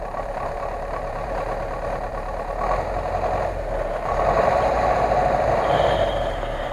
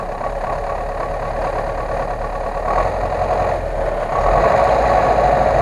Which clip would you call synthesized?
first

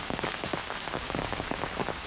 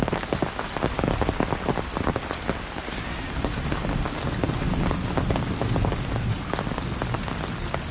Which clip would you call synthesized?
first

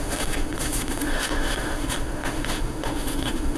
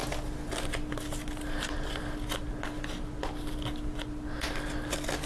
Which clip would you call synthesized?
first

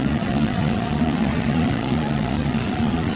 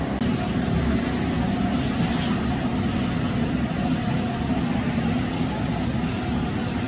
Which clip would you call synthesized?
first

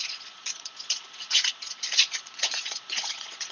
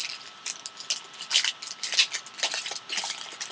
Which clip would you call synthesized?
first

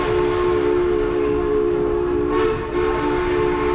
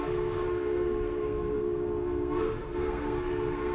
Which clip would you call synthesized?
second